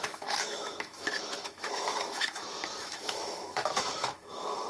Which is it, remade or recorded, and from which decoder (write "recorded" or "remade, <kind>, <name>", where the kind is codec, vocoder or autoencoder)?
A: remade, autoencoder, DAC-VAE